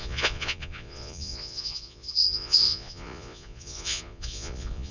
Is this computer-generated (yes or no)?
yes